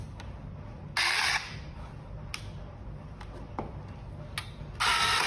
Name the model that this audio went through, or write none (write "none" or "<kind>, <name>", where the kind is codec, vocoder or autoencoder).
none